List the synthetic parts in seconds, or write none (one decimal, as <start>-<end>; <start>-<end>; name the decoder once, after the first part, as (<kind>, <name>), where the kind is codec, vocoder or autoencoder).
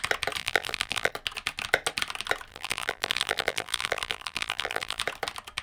0.4-1.1 (vocoder, BigVGAN v2); 2.5-5.0